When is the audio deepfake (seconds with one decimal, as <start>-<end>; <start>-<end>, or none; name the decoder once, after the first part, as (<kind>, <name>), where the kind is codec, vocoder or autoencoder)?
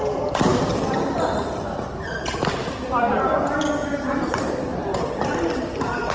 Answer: 3.8-5.4 (vocoder, BigVGAN v2)